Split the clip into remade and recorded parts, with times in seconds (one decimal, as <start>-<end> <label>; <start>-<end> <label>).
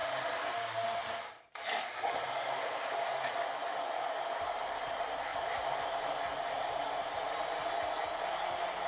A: 0.0-8.9 recorded